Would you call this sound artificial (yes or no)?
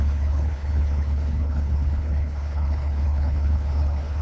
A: yes